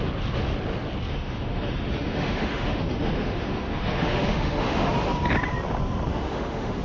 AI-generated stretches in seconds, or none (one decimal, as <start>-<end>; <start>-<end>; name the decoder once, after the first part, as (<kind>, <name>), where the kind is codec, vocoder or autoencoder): 1.1-4.9 (autoencoder, DAC-VAE); 6.1-6.8